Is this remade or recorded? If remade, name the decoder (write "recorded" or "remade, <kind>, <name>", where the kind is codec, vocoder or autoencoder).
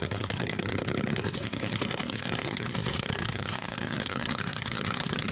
remade, codec, SNAC